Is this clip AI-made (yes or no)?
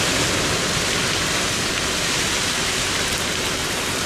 no